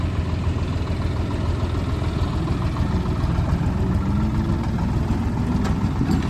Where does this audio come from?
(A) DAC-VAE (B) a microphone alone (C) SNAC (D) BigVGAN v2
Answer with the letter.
B